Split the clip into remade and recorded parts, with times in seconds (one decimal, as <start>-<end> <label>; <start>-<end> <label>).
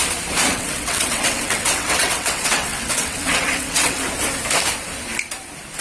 0.0-0.5 recorded; 0.5-4.0 remade; 4.0-5.8 recorded